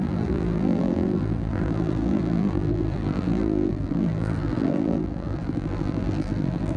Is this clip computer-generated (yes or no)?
yes